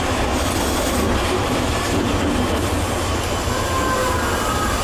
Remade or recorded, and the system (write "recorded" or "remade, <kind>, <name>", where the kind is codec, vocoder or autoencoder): recorded